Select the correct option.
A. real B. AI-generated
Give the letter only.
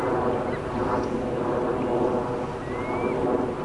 A